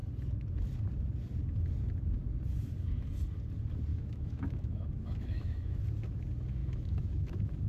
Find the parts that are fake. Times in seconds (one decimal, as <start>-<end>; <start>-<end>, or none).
3.9-5.8; 6.6-7.7